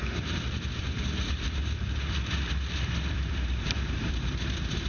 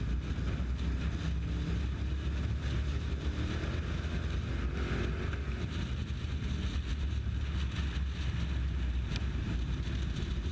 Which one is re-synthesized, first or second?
first